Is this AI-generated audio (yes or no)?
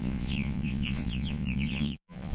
yes